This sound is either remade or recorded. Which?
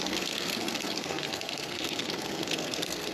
remade